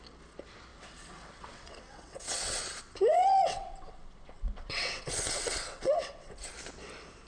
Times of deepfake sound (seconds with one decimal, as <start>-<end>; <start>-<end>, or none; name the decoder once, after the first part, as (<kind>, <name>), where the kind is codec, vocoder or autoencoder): 0.7-2.6 (vocoder, WaveNeXt); 3.1-6.5